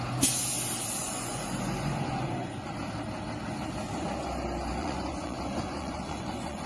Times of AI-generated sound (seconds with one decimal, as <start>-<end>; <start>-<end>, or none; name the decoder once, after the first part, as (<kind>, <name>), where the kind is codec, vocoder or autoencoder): 1.0-2.7 (vocoder, Vocos); 4.8-6.7